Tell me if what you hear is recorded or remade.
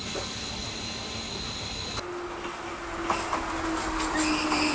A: recorded